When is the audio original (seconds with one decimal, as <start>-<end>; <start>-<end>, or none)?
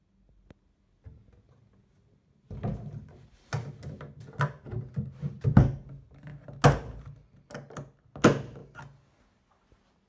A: 0.0-10.1